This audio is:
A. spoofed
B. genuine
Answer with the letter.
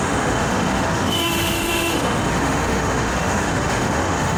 A